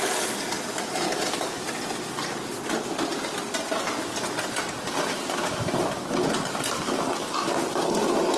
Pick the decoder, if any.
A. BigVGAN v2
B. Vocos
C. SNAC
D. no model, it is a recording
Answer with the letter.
D